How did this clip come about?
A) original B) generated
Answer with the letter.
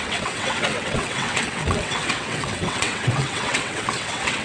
B